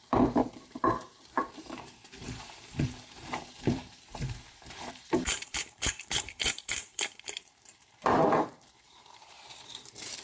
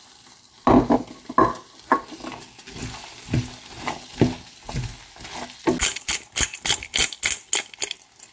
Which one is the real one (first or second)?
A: second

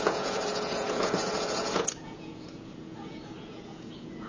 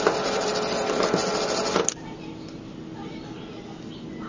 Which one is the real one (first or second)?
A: second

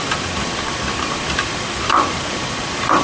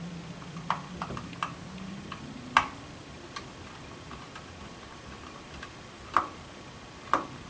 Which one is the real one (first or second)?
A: second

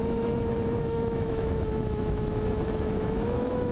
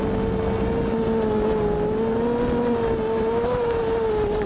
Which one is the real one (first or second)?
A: second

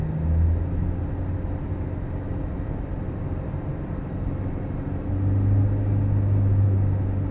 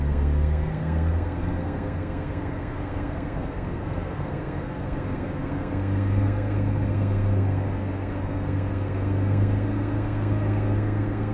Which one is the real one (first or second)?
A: first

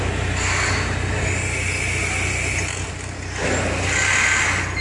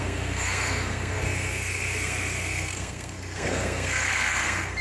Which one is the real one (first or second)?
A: first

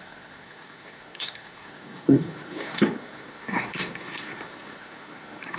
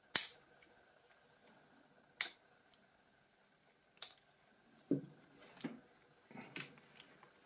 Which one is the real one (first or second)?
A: second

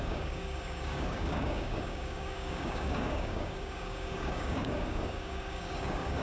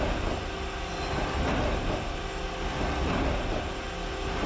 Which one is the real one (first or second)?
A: second